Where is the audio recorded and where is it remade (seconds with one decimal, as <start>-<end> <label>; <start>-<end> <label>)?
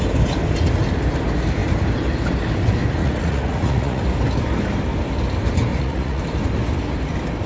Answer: 0.0-3.0 recorded; 3.0-4.0 remade; 4.0-5.7 recorded; 5.7-6.2 remade; 6.2-7.5 recorded